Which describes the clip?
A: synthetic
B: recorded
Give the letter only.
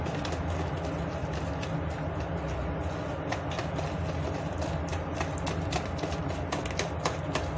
B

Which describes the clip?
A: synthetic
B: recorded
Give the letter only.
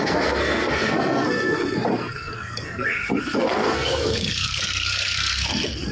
A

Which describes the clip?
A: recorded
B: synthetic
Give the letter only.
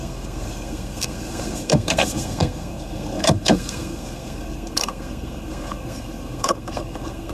B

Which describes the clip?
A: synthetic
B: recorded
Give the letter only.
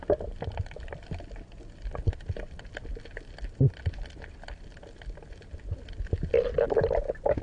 B